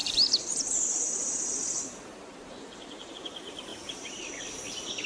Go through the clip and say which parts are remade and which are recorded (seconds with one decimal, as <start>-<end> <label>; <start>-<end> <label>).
0.0-3.1 remade; 3.1-3.7 recorded; 3.7-4.4 remade; 4.4-5.1 recorded